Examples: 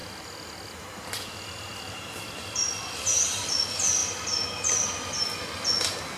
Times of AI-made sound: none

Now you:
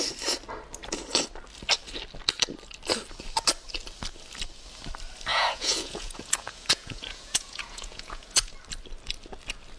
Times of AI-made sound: 5.3-8.5 (vocoder, Vocos)